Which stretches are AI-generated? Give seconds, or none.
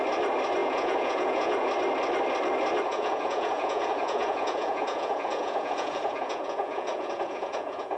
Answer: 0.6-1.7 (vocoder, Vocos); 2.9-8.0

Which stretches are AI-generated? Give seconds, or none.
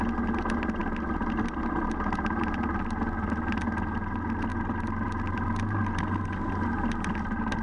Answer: 4.5-5.9 (vocoder, BigVGAN v2)